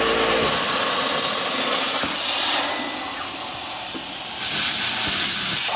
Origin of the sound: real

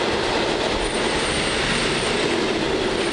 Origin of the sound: real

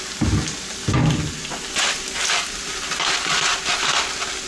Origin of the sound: real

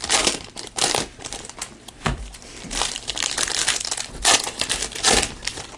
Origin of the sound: fake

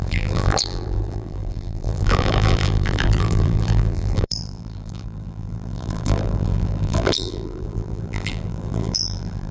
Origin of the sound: fake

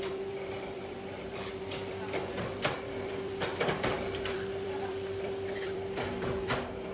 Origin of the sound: fake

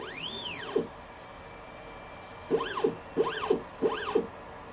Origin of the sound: real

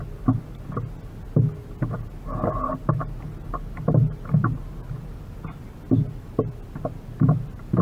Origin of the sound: real